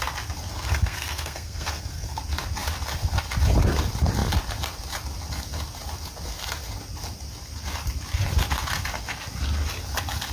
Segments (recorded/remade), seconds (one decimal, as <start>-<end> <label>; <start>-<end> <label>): 0.0-0.5 recorded; 0.5-2.2 remade; 2.2-10.3 recorded